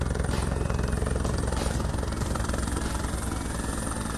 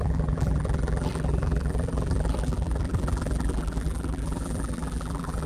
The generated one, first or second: second